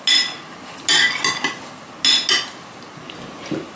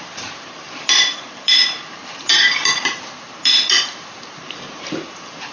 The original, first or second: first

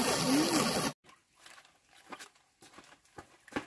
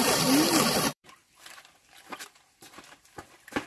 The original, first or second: first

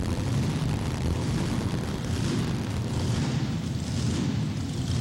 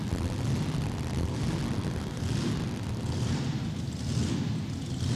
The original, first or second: second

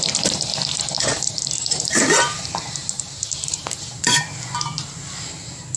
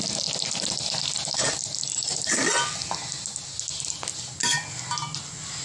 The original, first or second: second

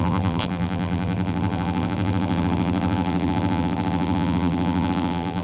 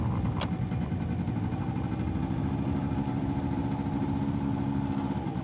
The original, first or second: second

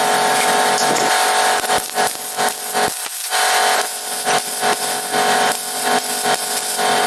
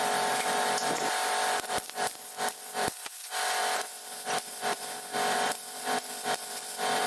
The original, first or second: first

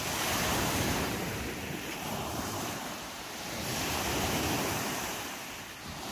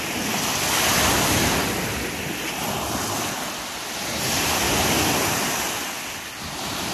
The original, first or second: second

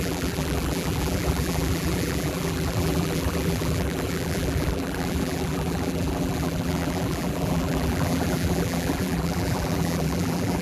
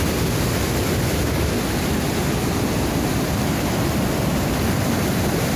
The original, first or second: second